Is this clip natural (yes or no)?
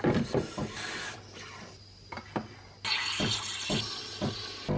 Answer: yes